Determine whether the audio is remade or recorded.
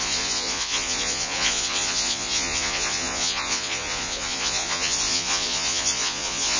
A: remade